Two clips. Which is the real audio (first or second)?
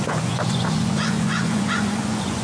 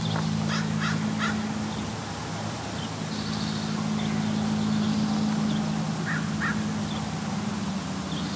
second